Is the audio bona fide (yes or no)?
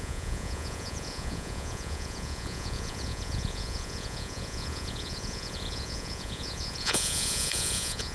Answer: no